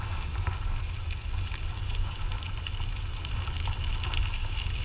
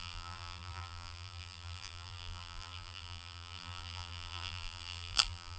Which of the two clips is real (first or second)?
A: first